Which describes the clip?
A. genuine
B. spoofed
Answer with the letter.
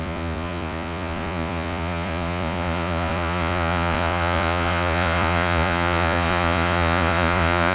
B